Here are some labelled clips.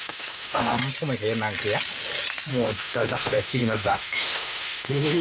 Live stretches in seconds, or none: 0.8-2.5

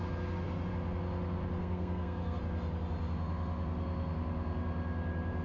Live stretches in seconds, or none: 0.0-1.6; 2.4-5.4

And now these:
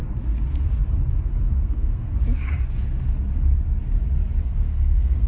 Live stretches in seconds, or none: 0.0-1.5; 2.1-4.4

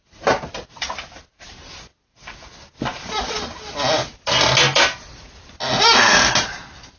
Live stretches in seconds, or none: 0.0-7.0

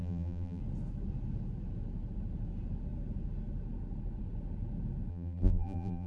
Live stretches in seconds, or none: 0.6-5.1

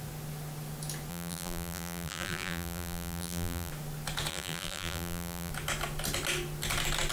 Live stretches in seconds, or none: 0.0-1.1; 3.7-4.3; 5.5-7.1

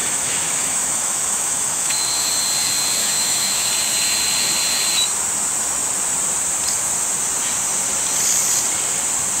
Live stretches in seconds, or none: 2.3-3.0; 3.7-9.4

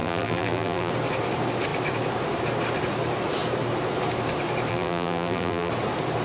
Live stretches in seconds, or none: 0.9-4.7; 5.7-6.2